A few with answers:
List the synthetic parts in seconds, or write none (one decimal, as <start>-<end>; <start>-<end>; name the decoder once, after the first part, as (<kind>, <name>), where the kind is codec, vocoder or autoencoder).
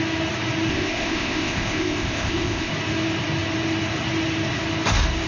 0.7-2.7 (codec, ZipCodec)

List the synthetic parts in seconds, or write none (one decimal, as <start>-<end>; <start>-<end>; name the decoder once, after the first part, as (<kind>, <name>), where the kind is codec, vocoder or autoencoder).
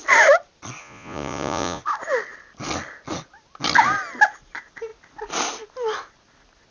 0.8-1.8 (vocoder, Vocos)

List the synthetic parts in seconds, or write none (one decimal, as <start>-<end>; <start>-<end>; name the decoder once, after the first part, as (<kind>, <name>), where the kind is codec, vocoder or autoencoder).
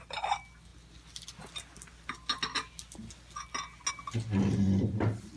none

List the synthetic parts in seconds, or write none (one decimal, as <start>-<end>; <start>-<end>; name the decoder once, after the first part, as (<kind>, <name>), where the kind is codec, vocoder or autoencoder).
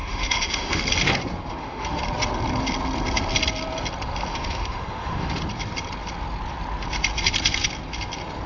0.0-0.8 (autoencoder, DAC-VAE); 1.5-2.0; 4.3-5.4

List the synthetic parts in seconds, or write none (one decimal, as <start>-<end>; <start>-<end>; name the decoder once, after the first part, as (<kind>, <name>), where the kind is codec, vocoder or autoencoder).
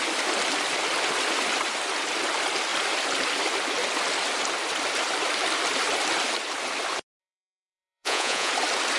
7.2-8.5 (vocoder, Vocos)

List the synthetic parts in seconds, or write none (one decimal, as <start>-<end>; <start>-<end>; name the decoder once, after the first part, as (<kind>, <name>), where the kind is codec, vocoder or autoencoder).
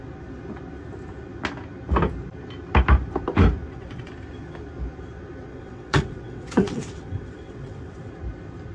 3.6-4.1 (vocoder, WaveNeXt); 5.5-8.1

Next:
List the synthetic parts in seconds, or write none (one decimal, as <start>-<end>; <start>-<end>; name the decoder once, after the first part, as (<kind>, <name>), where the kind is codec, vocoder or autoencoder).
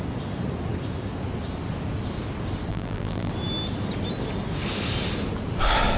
2.7-3.3 (vocoder, BigVGAN v2)